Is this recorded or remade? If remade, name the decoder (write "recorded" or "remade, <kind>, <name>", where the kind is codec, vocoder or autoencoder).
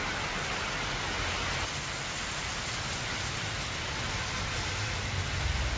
recorded